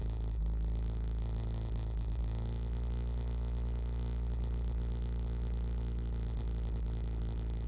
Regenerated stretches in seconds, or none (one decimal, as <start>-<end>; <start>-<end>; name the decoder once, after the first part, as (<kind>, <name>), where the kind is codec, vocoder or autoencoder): none